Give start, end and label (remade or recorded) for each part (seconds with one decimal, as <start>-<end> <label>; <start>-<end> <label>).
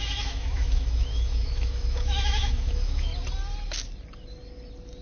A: 0.0-3.1 remade; 3.1-5.0 recorded